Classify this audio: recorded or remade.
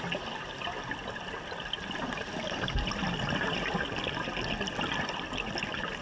recorded